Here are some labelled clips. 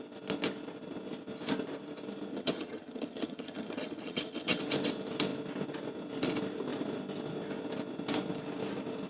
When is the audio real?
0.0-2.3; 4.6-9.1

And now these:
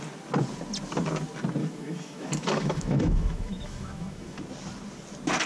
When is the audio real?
0.0-1.6; 4.4-5.5